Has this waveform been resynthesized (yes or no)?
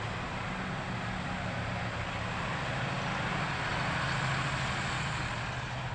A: no